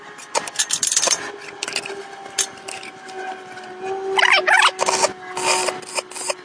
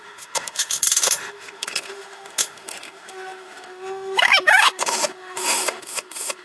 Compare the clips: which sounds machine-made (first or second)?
second